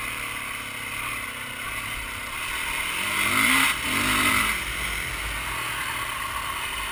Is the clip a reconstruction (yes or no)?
no